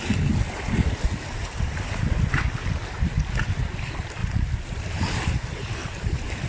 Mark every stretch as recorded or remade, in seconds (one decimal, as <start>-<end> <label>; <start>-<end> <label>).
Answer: 0.0-6.5 recorded